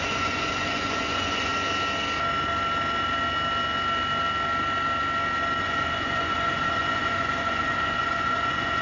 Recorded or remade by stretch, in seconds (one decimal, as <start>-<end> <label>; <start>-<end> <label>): 0.0-1.5 remade; 1.5-5.6 recorded; 5.6-8.8 remade